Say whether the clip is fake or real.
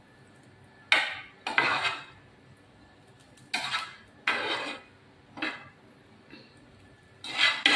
real